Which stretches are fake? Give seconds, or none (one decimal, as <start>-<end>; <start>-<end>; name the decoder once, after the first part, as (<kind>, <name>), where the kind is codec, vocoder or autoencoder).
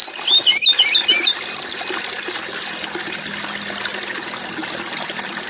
none